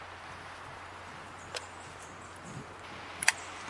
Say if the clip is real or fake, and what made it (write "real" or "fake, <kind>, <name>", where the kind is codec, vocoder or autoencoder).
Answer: fake, vocoder, BigVGAN v2